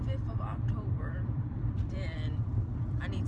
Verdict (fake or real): fake